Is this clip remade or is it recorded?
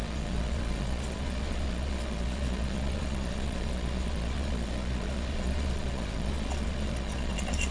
remade